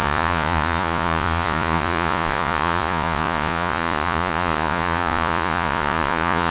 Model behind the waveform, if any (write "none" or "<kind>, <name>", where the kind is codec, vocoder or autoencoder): vocoder, Vocos